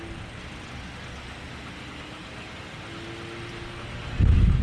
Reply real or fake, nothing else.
real